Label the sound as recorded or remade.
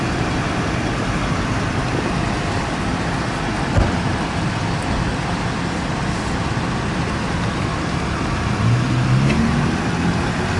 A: recorded